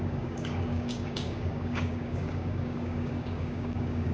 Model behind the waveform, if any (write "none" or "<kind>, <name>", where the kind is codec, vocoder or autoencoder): codec, DAC